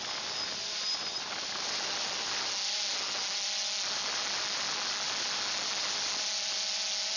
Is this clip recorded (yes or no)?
yes